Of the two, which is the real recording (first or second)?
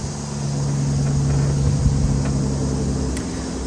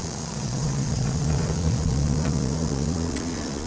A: first